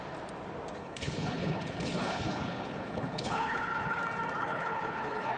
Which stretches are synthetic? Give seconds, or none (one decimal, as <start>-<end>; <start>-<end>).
0.8-4.0; 4.4-5.4